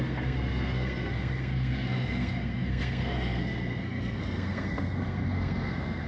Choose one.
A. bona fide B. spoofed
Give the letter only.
B